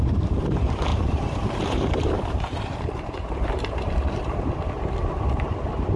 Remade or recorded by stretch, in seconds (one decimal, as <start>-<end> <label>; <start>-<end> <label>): 0.0-0.9 recorded; 0.9-4.5 remade; 4.5-6.0 recorded